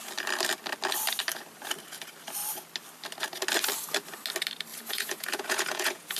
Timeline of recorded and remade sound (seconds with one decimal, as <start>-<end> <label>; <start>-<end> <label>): 0.0-4.7 recorded; 4.7-6.2 remade